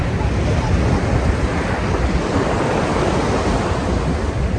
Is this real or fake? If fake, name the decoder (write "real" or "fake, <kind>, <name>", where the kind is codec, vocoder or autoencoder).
real